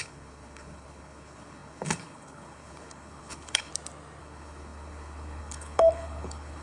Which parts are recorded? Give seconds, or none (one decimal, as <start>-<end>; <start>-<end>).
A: 3.7-4.2